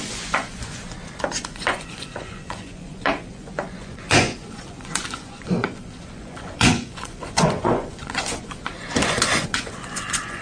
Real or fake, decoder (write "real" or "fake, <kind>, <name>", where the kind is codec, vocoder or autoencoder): fake, vocoder, Vocos